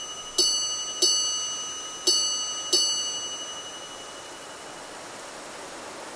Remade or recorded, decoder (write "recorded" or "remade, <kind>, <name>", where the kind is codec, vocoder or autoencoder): recorded